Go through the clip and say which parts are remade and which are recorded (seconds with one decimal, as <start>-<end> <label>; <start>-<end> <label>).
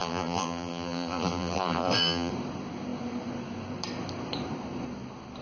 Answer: 0.0-2.3 remade; 2.3-5.4 recorded